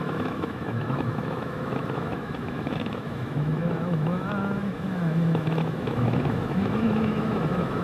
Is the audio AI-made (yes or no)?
yes